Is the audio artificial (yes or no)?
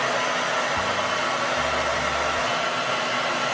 no